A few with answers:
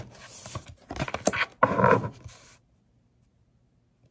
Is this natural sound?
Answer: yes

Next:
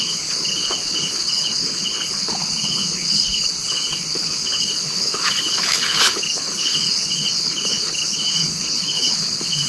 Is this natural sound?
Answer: no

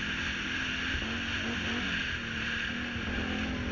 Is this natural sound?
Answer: yes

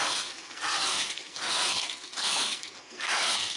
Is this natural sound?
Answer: no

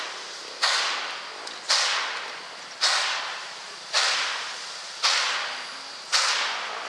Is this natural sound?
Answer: yes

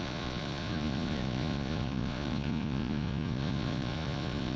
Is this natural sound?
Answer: no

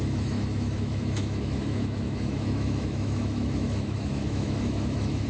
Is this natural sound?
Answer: no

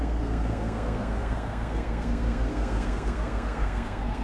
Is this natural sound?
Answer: no